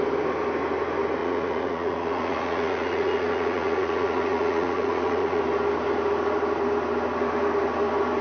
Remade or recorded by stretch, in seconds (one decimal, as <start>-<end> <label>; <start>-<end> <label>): 0.0-1.2 recorded; 1.2-5.4 remade; 5.4-8.2 recorded